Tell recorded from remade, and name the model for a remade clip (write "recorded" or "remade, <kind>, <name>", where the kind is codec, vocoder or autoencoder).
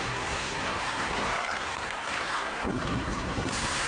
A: remade, codec, SNAC